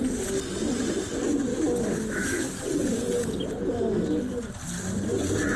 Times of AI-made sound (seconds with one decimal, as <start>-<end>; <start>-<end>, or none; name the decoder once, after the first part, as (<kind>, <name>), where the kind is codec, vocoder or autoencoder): 1.5-2.4 (autoencoder, DAC-VAE)